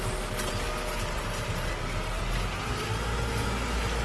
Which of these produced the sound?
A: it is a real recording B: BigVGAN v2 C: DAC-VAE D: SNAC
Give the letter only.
A